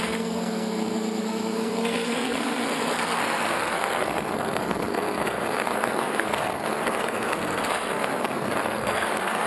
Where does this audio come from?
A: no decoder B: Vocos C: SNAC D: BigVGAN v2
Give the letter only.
C